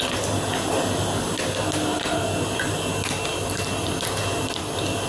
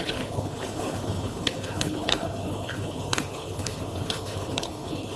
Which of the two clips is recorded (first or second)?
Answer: first